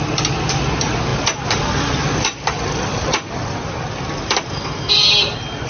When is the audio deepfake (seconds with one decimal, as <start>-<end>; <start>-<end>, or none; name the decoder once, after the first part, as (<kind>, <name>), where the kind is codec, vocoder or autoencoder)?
none